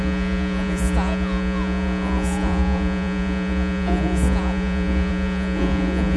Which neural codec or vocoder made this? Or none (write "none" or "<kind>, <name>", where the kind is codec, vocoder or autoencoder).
vocoder, Vocos